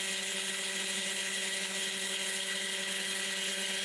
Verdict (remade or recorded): remade